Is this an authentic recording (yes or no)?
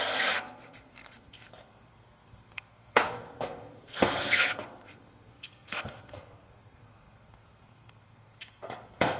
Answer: no